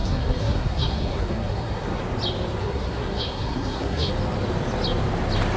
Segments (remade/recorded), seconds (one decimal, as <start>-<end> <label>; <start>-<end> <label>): 0.0-2.0 remade; 2.0-2.6 recorded; 2.6-4.1 remade; 4.1-5.6 recorded